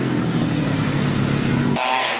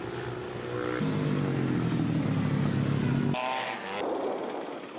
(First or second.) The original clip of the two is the second